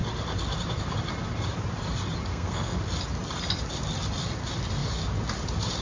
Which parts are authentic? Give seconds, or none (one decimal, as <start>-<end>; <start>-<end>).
0.0-2.3; 2.8-5.8